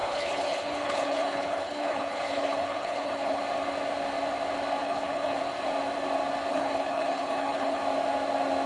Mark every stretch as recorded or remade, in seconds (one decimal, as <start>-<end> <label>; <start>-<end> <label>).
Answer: 0.0-3.4 remade; 3.4-4.8 recorded; 4.8-5.4 remade; 5.4-6.5 recorded; 6.5-7.8 remade; 7.8-8.7 recorded